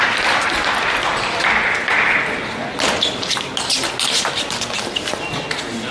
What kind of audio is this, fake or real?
real